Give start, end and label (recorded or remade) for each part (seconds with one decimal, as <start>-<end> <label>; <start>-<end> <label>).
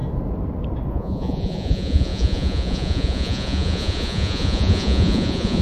0.0-0.9 recorded; 0.9-5.6 remade